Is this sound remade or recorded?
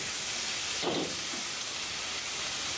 recorded